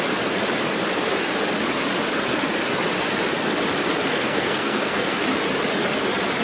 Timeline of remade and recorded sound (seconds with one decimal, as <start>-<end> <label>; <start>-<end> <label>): 0.0-4.1 recorded; 4.1-5.2 remade; 5.2-6.4 recorded